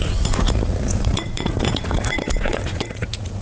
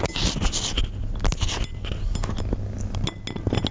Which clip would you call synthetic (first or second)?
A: first